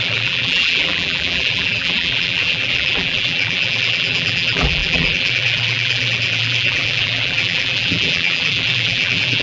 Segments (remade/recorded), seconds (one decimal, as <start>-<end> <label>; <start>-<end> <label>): 0.0-9.4 remade